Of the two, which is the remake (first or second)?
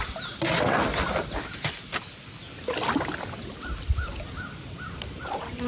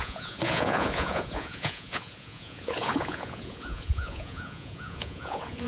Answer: second